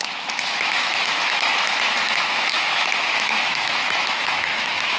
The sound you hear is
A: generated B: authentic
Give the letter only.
A